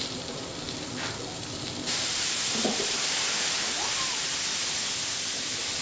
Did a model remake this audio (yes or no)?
yes